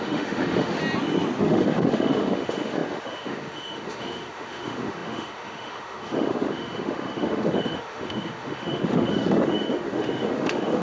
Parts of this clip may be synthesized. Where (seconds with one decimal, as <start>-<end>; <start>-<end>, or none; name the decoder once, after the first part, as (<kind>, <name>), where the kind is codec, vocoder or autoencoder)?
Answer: 0.0-0.8 (autoencoder, DAC-VAE); 1.4-10.8